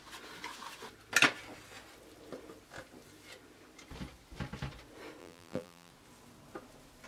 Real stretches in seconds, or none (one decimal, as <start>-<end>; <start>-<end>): 0.0-5.2; 5.9-7.1